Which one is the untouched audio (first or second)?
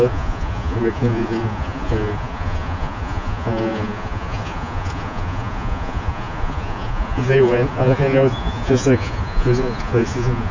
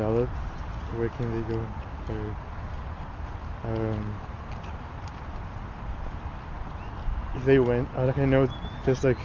second